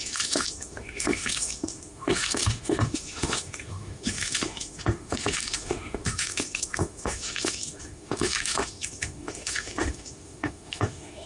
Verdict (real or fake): fake